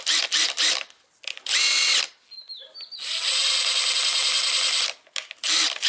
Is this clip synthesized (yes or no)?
no